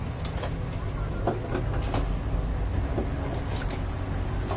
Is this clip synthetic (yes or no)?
no